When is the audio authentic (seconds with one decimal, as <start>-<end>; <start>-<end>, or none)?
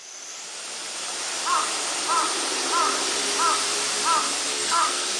0.0-4.5